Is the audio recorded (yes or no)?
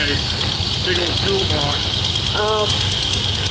yes